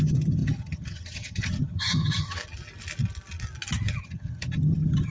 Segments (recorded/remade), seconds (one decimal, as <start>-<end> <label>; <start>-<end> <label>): 0.0-2.4 remade; 2.4-4.0 recorded; 4.0-5.1 remade

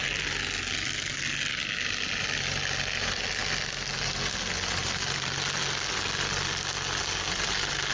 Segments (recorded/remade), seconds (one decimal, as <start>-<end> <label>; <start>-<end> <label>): 0.0-7.9 recorded

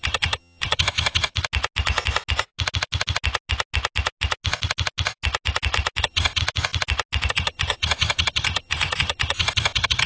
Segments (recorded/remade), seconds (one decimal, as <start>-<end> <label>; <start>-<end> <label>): 0.0-1.3 remade; 1.3-6.0 recorded; 6.0-6.4 remade; 6.4-7.3 recorded; 7.3-10.1 remade

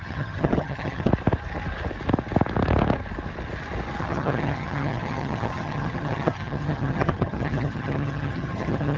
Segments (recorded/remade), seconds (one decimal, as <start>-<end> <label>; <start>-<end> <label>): 0.0-1.1 remade; 1.1-4.0 recorded; 4.0-9.0 remade

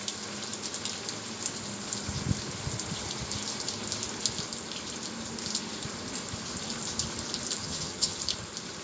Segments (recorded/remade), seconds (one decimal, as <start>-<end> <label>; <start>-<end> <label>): 0.0-7.6 recorded; 7.6-8.2 remade; 8.2-8.8 recorded

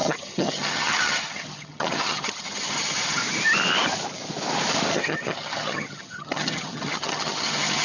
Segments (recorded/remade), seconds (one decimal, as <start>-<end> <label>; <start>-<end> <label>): 0.0-3.2 remade; 3.2-4.9 recorded; 4.9-7.8 remade